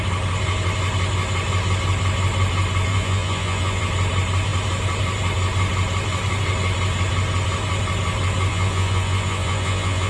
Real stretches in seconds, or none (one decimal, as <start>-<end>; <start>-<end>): 0.0-2.9; 3.8-8.5